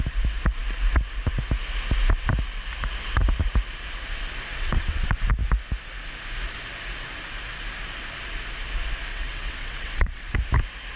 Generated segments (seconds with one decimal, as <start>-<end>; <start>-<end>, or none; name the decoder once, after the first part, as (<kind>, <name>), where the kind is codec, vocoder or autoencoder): 4.5-5.3 (vocoder, WaveNeXt); 9.1-10.3